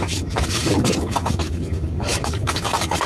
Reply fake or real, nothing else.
fake